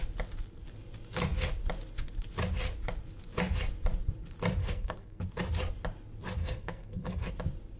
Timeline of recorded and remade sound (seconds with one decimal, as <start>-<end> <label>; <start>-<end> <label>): 0.0-4.6 recorded; 4.6-5.2 remade; 5.2-6.4 recorded; 6.4-7.3 remade; 7.3-7.8 recorded